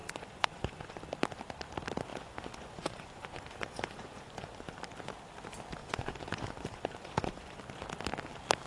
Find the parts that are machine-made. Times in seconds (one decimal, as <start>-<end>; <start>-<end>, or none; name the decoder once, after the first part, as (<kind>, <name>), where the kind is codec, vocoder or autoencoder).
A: 0.0-1.0 (vocoder, Vocos); 2.1-4.8; 5.8-7.6

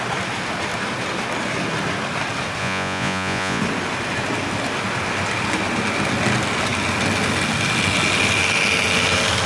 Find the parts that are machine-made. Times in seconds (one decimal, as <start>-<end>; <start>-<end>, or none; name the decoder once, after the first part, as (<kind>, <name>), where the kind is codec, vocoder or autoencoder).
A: 2.6-3.6 (vocoder, Vocos)

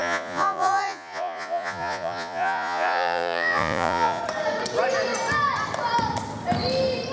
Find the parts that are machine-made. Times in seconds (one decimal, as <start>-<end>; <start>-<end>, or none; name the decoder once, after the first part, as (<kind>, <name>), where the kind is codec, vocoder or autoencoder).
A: 0.0-4.2 (vocoder, Vocos)

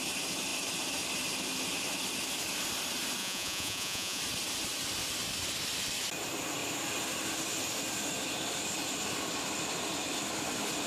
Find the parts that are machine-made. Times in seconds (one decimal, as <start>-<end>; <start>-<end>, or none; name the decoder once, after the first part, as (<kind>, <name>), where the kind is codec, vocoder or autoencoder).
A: 3.2-4.2 (vocoder, Vocos)

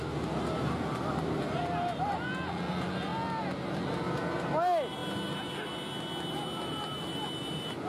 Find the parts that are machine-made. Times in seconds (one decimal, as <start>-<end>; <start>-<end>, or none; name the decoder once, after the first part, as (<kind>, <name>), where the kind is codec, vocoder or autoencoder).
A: none